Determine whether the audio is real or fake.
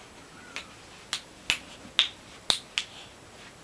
real